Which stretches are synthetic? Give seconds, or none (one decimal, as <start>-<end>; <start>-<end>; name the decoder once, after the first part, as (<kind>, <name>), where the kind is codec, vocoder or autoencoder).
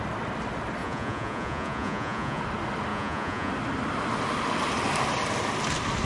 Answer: 0.8-2.4 (vocoder, Vocos); 2.9-3.5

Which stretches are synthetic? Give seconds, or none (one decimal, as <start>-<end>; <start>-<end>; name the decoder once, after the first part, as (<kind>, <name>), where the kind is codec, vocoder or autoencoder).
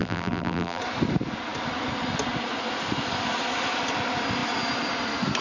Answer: 0.0-0.8 (vocoder, BigVGAN v2)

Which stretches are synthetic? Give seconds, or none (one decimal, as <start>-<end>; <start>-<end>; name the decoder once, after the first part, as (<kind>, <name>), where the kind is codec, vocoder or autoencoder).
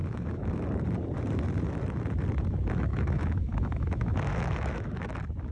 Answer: 0.0-0.6 (autoencoder, DAC-VAE); 2.9-5.1